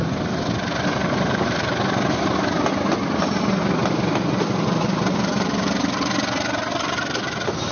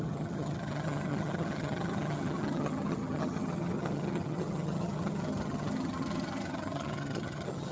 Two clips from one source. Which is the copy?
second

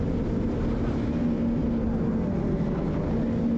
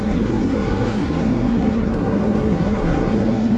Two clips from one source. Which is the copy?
second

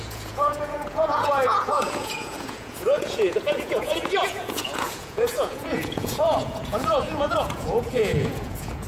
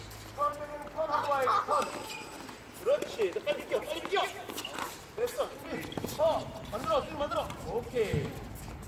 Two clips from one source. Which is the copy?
first